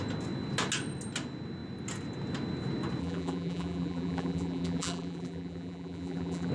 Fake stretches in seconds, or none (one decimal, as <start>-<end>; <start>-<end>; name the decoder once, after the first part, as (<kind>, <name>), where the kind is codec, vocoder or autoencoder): 3.0-6.5 (vocoder, BigVGAN v2)